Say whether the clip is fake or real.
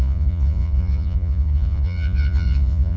fake